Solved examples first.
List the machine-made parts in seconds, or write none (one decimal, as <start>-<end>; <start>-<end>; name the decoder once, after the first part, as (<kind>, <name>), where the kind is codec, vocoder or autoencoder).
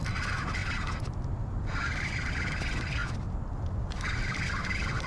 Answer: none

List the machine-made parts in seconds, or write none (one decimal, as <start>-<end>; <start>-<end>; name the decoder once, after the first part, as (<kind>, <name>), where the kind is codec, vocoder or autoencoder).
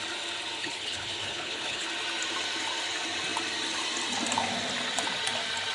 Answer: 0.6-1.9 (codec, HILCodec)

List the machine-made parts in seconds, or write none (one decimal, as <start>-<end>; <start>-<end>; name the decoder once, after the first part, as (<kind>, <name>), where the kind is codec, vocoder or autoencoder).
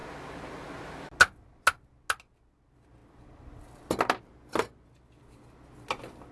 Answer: none